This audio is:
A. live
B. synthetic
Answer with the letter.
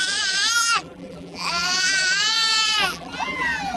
B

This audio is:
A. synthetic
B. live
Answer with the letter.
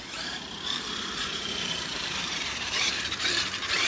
A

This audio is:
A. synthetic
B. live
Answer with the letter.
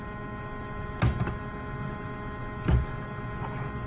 B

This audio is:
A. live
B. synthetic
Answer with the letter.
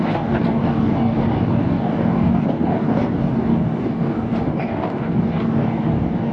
B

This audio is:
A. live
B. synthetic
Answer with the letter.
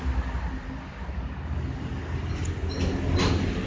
A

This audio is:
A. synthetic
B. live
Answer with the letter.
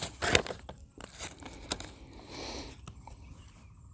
B